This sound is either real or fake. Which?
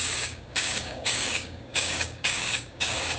fake